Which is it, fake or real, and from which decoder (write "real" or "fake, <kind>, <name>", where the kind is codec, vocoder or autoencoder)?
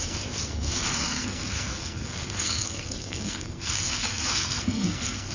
fake, codec, SNAC